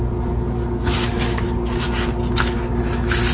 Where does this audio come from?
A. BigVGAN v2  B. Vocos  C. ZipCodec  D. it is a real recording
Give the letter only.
D